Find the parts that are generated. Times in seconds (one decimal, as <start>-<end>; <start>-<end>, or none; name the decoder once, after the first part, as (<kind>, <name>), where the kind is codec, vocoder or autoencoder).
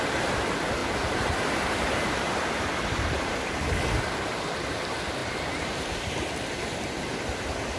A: 0.8-3.7 (vocoder, BigVGAN v2); 5.2-6.3